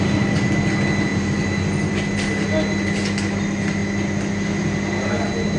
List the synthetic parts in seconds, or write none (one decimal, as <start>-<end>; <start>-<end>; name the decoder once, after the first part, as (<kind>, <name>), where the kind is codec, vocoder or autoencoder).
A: none